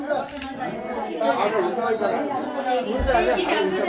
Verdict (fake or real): real